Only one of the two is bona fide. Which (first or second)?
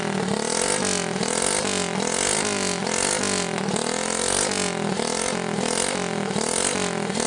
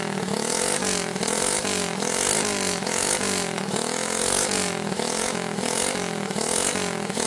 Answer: first